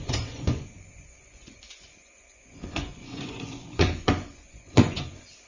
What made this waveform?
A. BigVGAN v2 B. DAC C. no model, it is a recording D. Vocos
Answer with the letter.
D